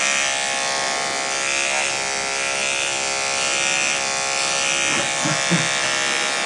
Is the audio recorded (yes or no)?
yes